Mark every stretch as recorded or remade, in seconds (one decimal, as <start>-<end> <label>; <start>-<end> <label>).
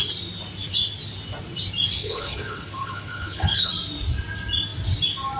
0.0-2.0 recorded; 2.0-3.7 remade; 3.7-5.4 recorded